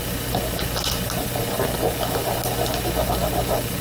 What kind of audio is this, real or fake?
real